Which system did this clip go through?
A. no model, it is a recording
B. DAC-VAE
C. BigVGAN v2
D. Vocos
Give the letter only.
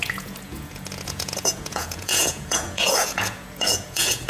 D